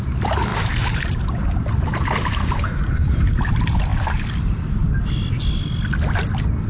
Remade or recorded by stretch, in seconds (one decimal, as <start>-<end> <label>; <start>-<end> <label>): 0.0-0.5 recorded; 0.5-3.5 remade; 3.5-6.7 recorded